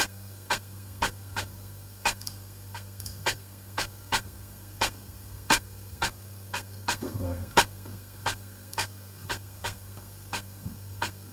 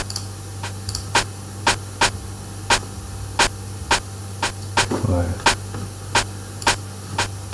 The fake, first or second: first